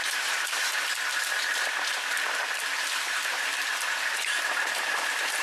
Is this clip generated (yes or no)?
no